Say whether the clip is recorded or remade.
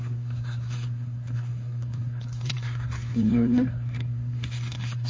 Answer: remade